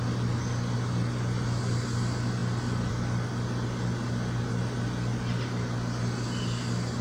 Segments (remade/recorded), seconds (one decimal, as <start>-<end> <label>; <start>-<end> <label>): 0.0-7.0 recorded